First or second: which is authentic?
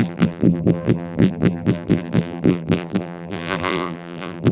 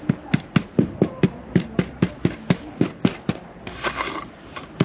second